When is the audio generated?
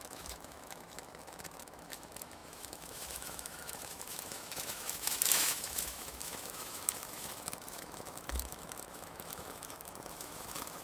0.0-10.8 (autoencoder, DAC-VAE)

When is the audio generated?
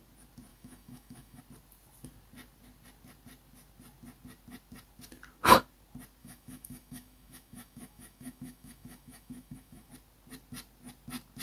0.5-1.4 (autoencoder, DAC-VAE); 6.2-9.9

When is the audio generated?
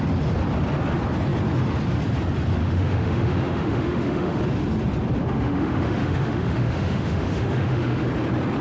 2.6-4.4 (autoencoder, DAC-VAE); 5.2-8.1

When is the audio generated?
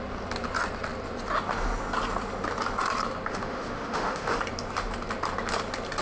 3.3-4.4 (autoencoder, DAC-VAE)